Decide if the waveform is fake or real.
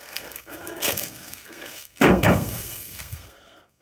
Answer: fake